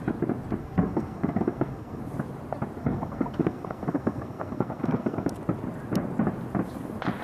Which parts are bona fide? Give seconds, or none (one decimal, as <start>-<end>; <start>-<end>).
0.0-0.6; 2.0-2.8; 5.3-7.2